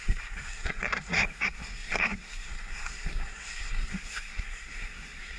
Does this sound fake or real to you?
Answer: fake